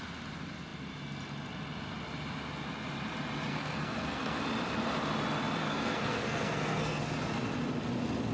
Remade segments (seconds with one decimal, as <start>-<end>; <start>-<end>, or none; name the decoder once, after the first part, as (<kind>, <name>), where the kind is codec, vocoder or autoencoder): 3.5-4.4 (codec, SNAC); 5.6-7.0